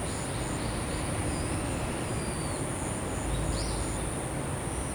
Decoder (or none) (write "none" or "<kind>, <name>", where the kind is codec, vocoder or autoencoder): none